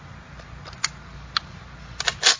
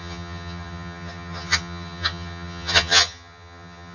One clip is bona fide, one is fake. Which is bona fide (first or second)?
first